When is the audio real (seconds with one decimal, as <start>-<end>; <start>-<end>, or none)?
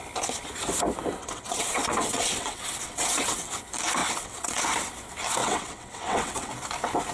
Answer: 0.0-1.2; 3.5-4.0; 4.6-5.4; 6.5-7.1